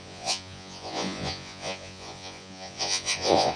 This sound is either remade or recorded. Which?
remade